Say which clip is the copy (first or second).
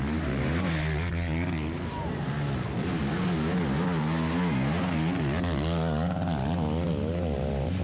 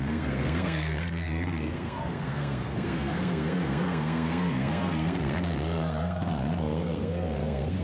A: second